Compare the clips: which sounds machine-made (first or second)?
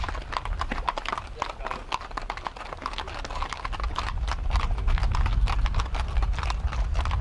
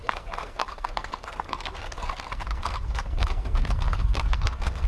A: second